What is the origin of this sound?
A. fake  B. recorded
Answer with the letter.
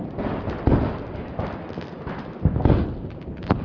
B